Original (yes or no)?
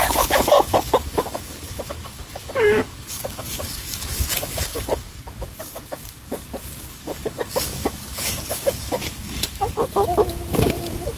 no